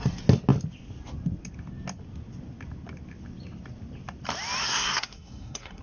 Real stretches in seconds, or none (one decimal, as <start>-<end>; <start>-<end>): 0.0-4.6